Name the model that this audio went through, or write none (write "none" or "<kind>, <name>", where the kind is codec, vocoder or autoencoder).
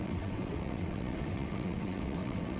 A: vocoder, WaveNeXt